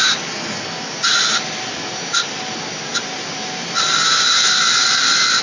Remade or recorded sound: recorded